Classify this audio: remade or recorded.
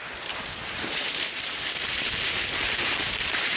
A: remade